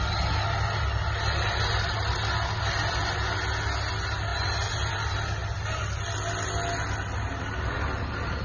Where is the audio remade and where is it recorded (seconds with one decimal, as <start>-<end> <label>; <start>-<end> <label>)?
0.0-8.4 recorded